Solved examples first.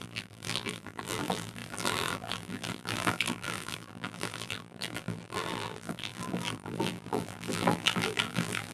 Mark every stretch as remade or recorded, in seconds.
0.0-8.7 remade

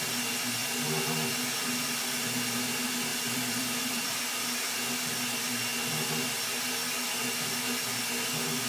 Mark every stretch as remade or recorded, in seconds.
0.0-0.6 recorded; 0.6-1.3 remade; 1.3-3.1 recorded; 3.1-4.2 remade; 4.2-8.7 recorded